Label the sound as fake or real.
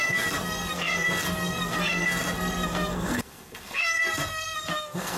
fake